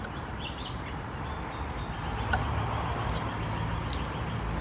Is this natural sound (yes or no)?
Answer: yes